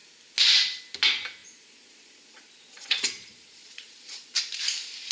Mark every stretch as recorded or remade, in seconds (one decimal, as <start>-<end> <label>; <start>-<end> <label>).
0.0-1.4 recorded; 1.4-4.4 remade; 4.4-5.1 recorded